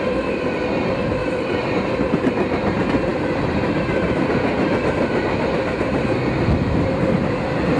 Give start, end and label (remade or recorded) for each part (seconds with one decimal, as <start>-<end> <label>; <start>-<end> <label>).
0.0-7.8 recorded